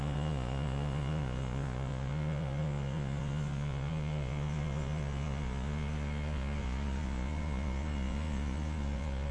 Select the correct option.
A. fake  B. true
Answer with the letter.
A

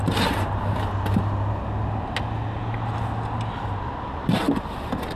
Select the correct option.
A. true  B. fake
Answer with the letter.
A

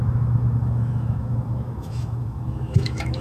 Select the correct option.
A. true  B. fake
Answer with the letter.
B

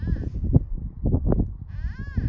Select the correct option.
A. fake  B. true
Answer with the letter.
B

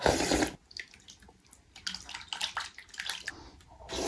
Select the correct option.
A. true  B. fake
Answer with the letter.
A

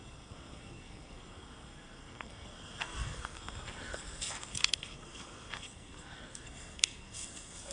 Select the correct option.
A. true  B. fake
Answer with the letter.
B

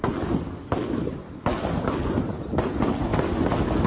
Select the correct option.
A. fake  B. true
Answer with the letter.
B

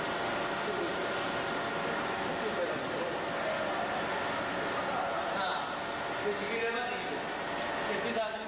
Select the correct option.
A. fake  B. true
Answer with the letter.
B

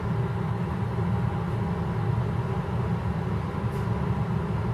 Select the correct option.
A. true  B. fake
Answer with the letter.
A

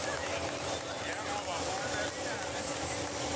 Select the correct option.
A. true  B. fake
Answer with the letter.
A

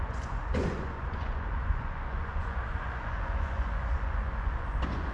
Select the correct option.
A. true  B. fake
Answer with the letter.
B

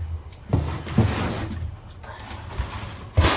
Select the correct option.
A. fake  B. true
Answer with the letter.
B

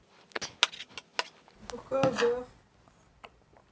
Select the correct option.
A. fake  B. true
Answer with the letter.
B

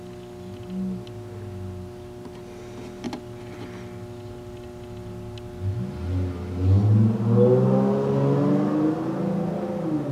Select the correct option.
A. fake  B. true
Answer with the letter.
B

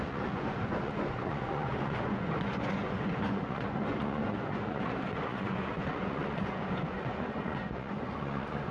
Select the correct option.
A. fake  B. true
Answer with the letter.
A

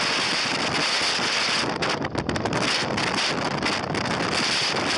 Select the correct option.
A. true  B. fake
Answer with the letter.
A